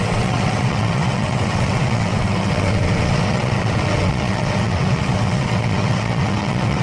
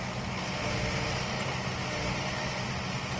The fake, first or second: first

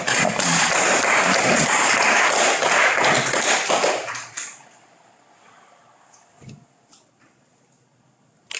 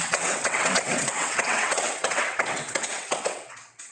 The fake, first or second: second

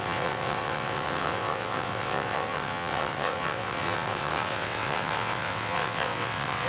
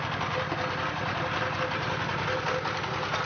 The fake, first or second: first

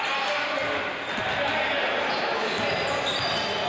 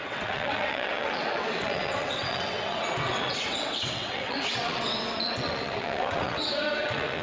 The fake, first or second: second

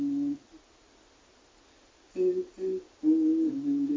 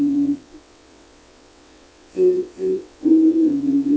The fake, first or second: second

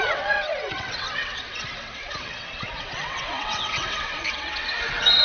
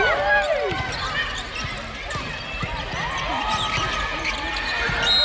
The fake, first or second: first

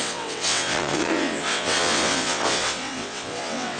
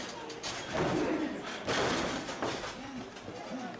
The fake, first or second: first